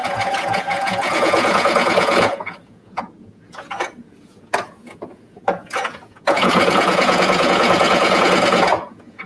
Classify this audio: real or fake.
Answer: fake